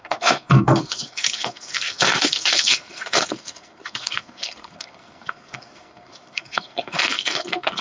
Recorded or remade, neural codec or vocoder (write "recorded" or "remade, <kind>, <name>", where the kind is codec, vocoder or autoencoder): remade, codec, SNAC